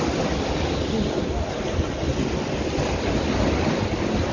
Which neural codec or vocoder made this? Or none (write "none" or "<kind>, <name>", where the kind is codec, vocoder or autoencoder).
none